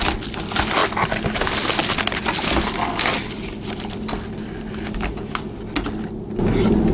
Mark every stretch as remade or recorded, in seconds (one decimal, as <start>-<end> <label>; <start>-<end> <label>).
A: 0.0-6.9 recorded